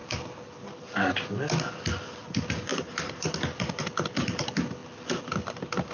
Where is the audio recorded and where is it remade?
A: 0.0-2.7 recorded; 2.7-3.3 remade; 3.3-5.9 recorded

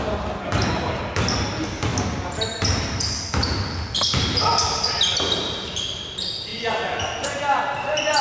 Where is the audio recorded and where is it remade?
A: 0.0-1.9 recorded; 1.9-3.2 remade; 3.2-6.5 recorded; 6.5-7.0 remade; 7.0-8.2 recorded

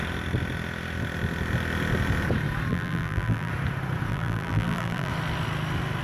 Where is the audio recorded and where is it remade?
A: 0.0-2.7 recorded; 2.7-3.5 remade; 3.5-4.1 recorded; 4.1-5.1 remade; 5.1-6.0 recorded

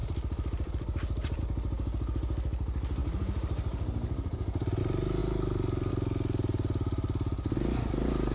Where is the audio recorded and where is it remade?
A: 0.0-1.4 remade; 1.4-3.0 recorded; 3.0-4.8 remade; 4.8-5.2 recorded; 5.2-5.9 remade; 5.9-8.3 recorded

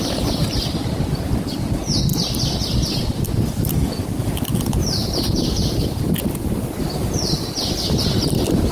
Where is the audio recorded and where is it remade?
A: 0.0-4.8 recorded; 4.8-6.0 remade; 6.0-8.7 recorded

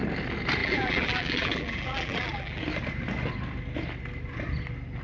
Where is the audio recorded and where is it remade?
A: 0.0-0.6 recorded; 0.6-2.6 remade; 2.6-5.0 recorded

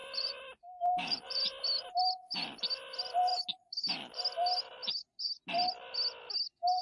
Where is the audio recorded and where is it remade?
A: 0.0-1.5 remade; 1.5-6.8 recorded